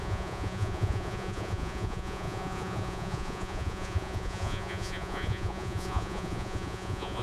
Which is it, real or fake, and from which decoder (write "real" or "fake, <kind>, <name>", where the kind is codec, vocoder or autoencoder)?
fake, vocoder, Vocos